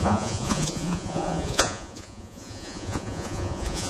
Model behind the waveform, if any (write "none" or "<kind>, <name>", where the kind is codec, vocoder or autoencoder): vocoder, Vocos